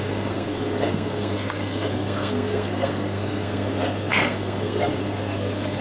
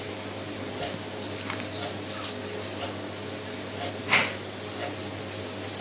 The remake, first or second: first